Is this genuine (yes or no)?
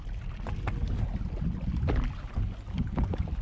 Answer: yes